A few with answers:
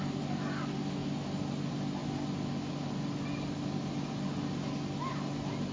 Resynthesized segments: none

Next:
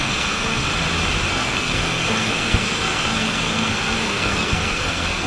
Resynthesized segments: 0.0-0.6 (codec, SNAC); 1.3-5.3

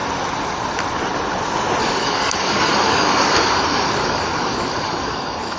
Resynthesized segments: 1.8-5.6 (codec, DAC)

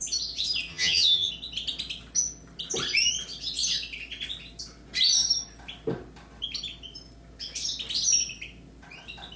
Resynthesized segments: 0.7-1.3 (vocoder, HiFi-GAN)

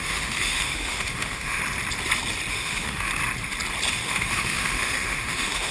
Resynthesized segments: 0.0-1.6 (autoencoder, DAC-VAE); 2.5-3.1; 3.9-5.7

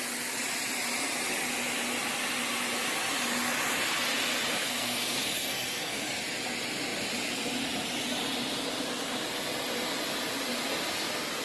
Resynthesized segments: 4.6-6.2 (codec, SNAC)

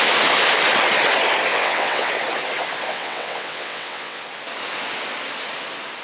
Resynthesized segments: 1.5-2.1 (vocoder, WaveNeXt); 2.9-4.2

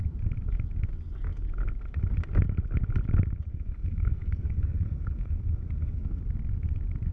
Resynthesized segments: 3.5-6.2 (codec, SNAC)